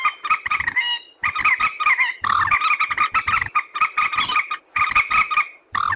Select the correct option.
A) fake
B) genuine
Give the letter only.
B